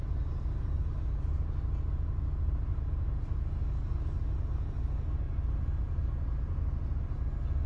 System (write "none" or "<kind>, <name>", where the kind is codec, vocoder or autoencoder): none